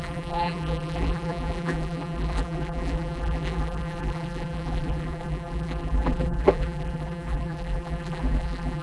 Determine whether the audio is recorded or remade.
remade